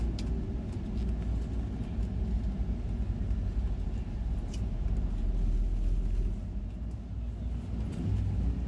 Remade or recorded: recorded